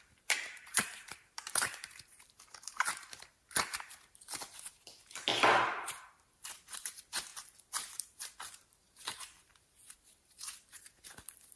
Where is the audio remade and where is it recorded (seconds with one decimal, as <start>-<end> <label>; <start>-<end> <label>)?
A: 0.0-11.6 remade